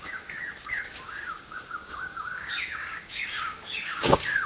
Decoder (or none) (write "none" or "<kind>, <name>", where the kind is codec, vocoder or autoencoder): codec, DAC